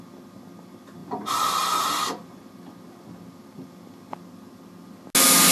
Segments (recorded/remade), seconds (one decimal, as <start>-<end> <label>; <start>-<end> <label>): 0.0-5.5 recorded